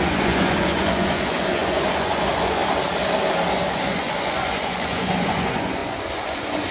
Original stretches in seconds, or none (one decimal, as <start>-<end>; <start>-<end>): 2.6-3.7